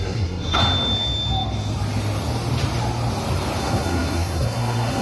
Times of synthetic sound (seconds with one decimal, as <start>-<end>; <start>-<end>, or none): 0.0-0.6; 3.6-5.0